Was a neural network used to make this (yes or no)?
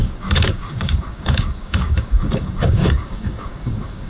yes